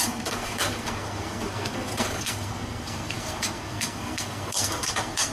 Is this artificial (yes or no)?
yes